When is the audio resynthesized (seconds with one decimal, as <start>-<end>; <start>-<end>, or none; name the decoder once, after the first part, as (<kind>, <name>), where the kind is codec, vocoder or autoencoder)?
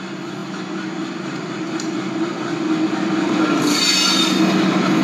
none